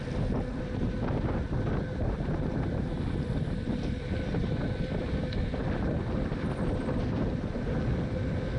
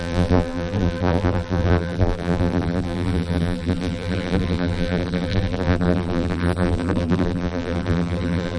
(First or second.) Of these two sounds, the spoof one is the second